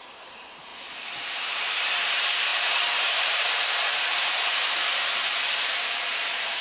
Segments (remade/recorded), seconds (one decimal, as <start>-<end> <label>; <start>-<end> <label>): 0.0-0.7 remade; 0.7-1.3 recorded; 1.3-6.6 remade